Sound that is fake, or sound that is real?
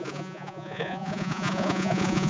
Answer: fake